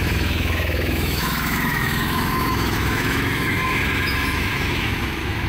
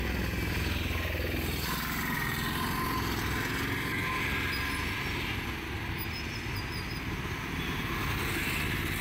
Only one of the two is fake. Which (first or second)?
first